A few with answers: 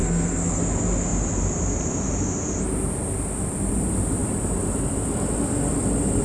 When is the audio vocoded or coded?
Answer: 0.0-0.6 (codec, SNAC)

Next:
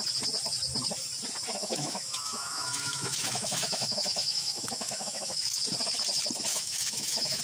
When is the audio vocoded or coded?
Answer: 1.6-5.6 (autoencoder, DAC-VAE); 6.5-7.4